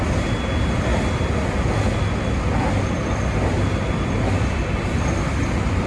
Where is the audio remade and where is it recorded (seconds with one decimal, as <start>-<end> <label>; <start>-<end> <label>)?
0.0-5.9 recorded